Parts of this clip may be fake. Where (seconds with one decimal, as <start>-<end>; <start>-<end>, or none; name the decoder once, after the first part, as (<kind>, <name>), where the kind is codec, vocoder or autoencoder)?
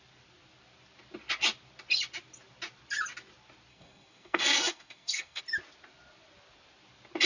3.7-5.4 (codec, SNAC)